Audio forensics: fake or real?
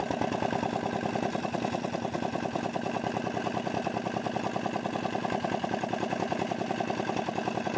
real